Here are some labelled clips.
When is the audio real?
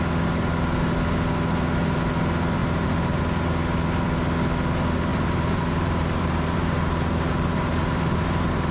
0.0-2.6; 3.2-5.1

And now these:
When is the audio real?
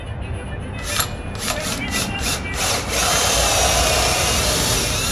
0.0-3.1